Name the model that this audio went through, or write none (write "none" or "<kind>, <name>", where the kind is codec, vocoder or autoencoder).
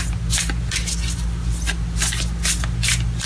none